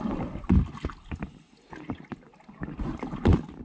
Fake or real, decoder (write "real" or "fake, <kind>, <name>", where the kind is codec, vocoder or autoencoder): real